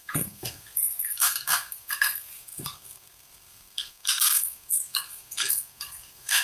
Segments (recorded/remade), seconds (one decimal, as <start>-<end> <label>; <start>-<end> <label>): 0.0-6.4 remade